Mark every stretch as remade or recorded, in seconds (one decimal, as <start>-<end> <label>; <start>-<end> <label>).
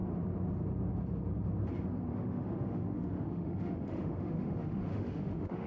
0.0-2.1 recorded; 2.1-5.7 remade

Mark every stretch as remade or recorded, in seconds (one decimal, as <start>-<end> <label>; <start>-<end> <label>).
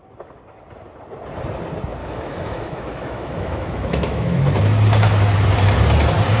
0.0-2.0 recorded; 2.0-4.4 remade; 4.4-6.4 recorded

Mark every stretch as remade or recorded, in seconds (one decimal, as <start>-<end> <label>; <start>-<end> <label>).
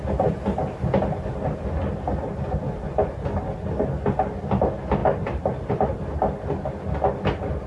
0.0-7.7 recorded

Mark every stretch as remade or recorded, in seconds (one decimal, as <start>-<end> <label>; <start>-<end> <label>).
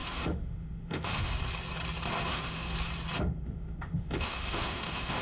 0.0-1.3 remade; 1.3-2.3 recorded; 2.3-2.7 remade; 2.7-3.2 recorded; 3.2-5.2 remade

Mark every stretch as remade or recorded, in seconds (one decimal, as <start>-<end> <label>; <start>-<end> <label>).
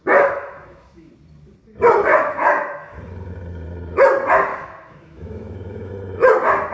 0.0-1.1 remade; 1.1-2.1 recorded; 2.1-3.0 remade; 3.0-4.5 recorded; 4.5-5.9 remade; 5.9-6.7 recorded